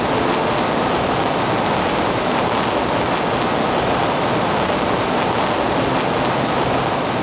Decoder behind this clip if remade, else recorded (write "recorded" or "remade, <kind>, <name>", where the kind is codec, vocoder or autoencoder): recorded